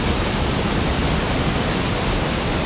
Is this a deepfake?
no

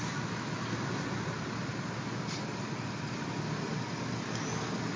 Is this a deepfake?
no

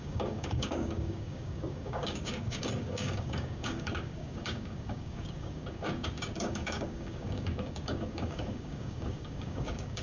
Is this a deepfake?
yes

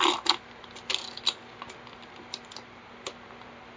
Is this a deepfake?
no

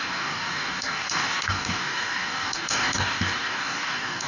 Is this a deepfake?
yes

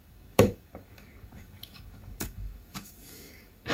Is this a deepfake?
yes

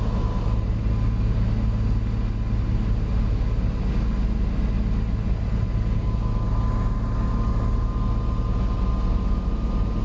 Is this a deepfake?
no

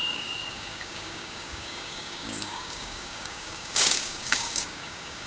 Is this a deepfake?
yes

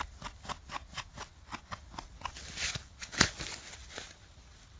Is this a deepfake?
no